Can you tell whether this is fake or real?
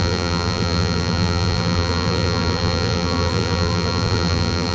fake